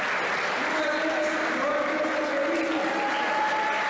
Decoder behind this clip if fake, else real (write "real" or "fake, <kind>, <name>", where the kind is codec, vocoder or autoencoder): real